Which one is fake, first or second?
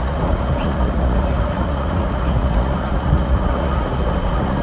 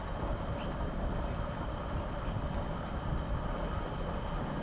first